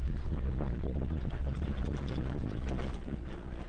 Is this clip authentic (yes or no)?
no